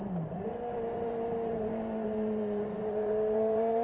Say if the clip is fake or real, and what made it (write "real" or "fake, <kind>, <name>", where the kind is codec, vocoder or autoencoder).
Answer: fake, vocoder, BigVGAN v2